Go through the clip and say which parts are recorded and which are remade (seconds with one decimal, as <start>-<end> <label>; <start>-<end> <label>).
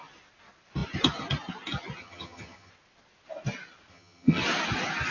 0.0-2.0 recorded; 2.0-2.7 remade; 2.7-3.9 recorded; 3.9-4.4 remade; 4.4-5.1 recorded